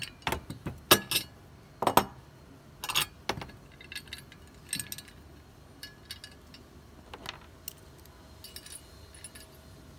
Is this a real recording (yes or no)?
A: yes